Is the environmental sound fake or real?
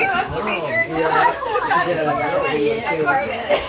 fake